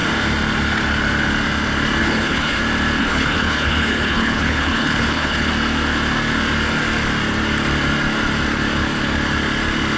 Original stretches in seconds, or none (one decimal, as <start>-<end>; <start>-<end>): 0.0-2.0; 2.6-3.0; 5.5-10.0

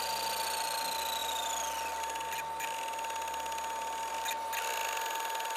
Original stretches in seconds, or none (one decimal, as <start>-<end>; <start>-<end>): 0.0-5.6